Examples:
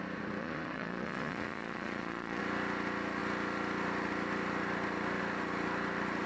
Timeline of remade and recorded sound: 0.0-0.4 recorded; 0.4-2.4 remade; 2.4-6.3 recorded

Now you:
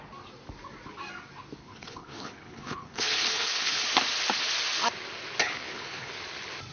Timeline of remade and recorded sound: 0.0-1.6 recorded; 1.6-3.8 remade; 3.8-5.4 recorded; 5.4-6.1 remade; 6.1-6.7 recorded

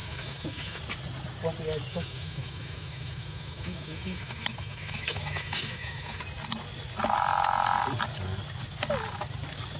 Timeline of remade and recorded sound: 0.0-0.8 remade; 0.8-1.9 recorded; 1.9-6.2 remade; 6.2-9.8 recorded

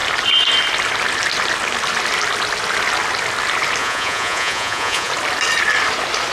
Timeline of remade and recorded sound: 0.0-3.8 recorded; 3.8-5.1 remade; 5.1-6.3 recorded

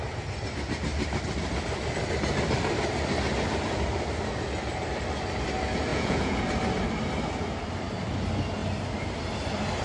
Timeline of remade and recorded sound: 0.0-5.9 recorded; 5.9-6.4 remade; 6.4-9.8 recorded

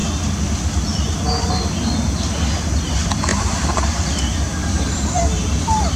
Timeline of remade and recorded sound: 0.0-3.3 recorded; 3.3-3.8 remade; 3.8-4.6 recorded; 4.6-6.0 remade